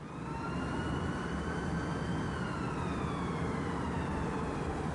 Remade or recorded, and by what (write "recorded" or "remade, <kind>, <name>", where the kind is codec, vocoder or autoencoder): recorded